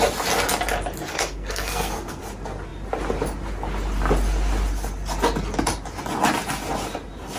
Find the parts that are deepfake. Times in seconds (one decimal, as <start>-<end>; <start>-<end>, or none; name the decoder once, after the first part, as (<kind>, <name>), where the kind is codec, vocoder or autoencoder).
1.1-2.2 (codec, SNAC)